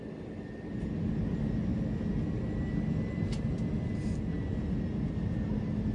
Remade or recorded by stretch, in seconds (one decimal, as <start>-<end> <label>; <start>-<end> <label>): 0.0-5.9 recorded